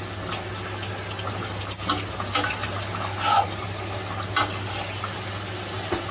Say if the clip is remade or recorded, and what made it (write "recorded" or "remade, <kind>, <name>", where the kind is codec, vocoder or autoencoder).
recorded